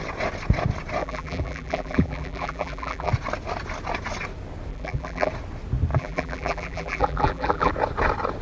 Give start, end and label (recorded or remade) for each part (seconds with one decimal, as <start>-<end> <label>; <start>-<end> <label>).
0.0-1.0 recorded; 1.0-3.1 remade; 3.1-4.7 recorded; 4.7-5.3 remade; 5.3-5.9 recorded; 5.9-7.7 remade; 7.7-8.4 recorded